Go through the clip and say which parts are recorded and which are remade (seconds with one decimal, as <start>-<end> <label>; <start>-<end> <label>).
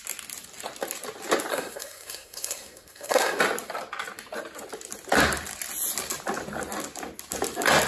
0.0-1.5 recorded; 1.5-3.4 remade; 3.4-7.9 recorded